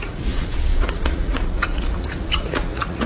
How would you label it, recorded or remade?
remade